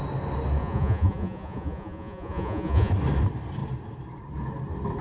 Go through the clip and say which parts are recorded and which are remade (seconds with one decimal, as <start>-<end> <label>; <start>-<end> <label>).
0.0-0.6 recorded; 0.6-2.9 remade; 2.9-5.0 recorded